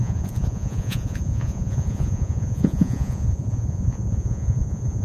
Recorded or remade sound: remade